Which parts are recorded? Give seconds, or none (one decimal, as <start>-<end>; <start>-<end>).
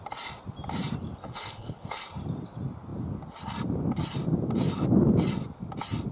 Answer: 0.0-1.2; 2.0-6.1